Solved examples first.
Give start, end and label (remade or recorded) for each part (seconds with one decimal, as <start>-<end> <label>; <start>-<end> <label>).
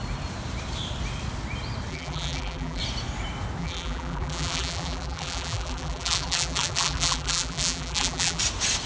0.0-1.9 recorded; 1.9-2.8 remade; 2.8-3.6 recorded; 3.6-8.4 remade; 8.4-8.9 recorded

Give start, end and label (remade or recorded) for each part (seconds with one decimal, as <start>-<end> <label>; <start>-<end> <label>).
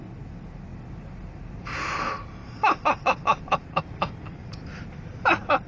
0.0-0.7 recorded; 0.7-2.0 remade; 2.0-2.4 recorded; 2.4-4.2 remade; 4.2-5.7 recorded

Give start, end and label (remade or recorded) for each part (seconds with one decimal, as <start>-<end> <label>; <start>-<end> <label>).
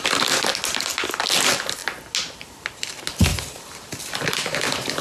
0.0-3.3 recorded; 3.3-5.0 remade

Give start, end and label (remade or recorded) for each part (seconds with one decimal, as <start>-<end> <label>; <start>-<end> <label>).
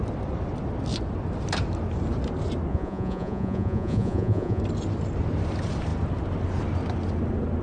0.0-2.7 recorded; 2.7-4.6 remade; 4.6-7.6 recorded